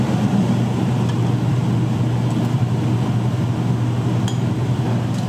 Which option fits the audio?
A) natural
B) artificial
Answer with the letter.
A